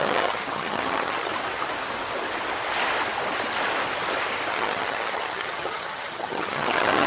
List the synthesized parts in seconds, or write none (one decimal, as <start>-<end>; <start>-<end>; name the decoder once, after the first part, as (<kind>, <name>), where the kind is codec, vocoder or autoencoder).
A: 0.0-1.3 (vocoder, HiFi-GAN); 4.5-7.1